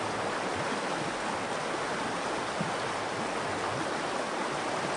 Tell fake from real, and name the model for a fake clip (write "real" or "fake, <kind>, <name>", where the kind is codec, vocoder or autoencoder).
real